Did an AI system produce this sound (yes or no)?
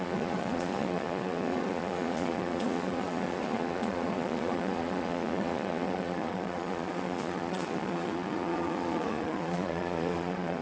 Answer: yes